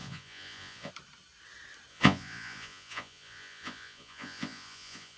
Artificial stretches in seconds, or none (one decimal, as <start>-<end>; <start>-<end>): 0.0-0.9; 1.9-5.2